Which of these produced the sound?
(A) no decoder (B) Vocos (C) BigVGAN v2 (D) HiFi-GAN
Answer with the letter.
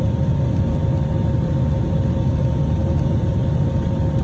C